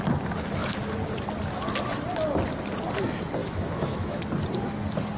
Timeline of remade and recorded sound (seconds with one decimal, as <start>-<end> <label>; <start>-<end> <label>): 0.0-3.4 recorded; 3.4-4.2 remade; 4.2-5.2 recorded